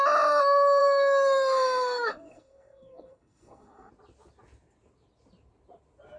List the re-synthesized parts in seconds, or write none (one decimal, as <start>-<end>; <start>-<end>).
0.8-3.9